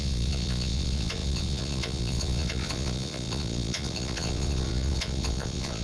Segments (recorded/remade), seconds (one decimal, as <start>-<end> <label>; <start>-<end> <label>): 0.0-5.8 remade